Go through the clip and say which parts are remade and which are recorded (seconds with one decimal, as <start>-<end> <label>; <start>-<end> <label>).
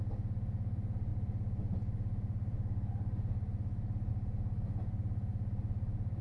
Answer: 0.0-6.2 recorded